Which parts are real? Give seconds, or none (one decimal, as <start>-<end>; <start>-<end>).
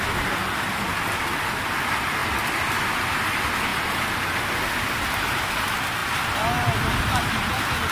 0.0-2.2; 2.9-7.9